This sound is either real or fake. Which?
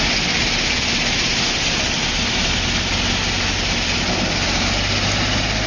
real